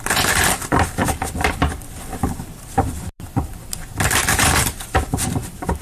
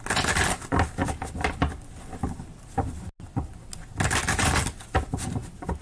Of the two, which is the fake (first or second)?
first